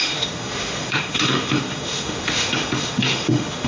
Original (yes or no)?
no